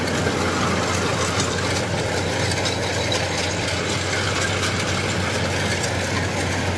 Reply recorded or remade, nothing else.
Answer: recorded